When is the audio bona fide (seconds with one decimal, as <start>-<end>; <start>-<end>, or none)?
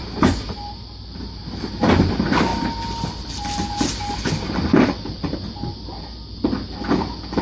0.0-7.4